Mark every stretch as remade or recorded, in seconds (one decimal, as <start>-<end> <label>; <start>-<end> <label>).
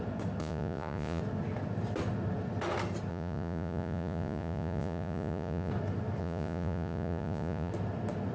0.0-0.4 recorded; 0.4-1.2 remade; 1.2-3.1 recorded; 3.1-5.7 remade; 5.7-6.2 recorded; 6.2-7.7 remade; 7.7-8.3 recorded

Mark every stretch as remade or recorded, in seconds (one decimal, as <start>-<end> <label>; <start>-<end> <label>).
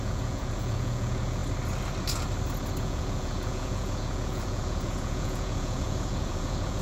0.0-1.4 remade; 1.4-2.8 recorded; 2.8-6.8 remade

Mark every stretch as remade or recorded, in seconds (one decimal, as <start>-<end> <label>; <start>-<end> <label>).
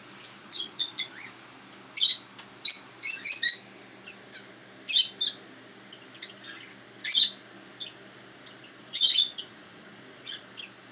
0.0-0.4 recorded; 0.4-1.1 remade; 1.1-8.8 recorded; 8.8-10.4 remade; 10.4-10.9 recorded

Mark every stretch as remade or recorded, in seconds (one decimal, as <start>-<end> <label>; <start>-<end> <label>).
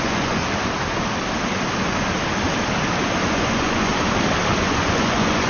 0.0-0.4 remade; 0.4-3.3 recorded; 3.3-3.9 remade; 3.9-4.6 recorded; 4.6-5.5 remade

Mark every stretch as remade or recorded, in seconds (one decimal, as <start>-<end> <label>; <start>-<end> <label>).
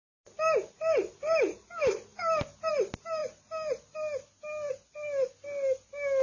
0.0-6.2 recorded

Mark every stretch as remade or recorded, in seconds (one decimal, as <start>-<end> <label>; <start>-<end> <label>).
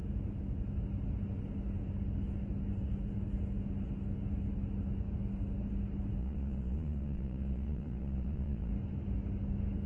0.0-6.2 recorded; 6.2-8.7 remade; 8.7-9.9 recorded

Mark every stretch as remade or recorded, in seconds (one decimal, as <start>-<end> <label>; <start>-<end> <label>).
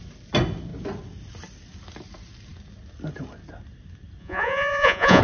0.0-4.2 recorded; 4.2-5.2 remade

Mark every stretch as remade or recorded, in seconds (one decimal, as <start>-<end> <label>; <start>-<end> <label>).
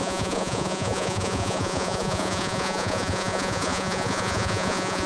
0.0-5.1 remade